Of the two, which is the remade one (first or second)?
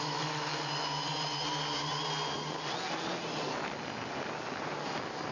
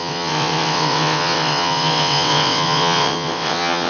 second